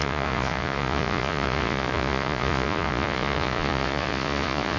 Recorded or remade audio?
remade